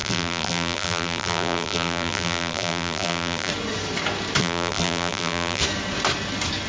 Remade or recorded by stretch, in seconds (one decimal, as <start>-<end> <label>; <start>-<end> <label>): 0.0-3.5 remade; 3.5-4.4 recorded; 4.4-5.6 remade; 5.6-6.7 recorded